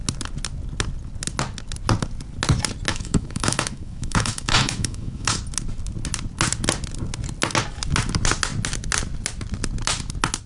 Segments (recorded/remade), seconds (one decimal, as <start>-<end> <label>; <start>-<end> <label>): 0.0-2.9 recorded; 2.9-5.4 remade; 5.4-10.5 recorded